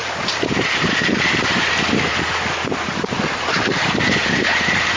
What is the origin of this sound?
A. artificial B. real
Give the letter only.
B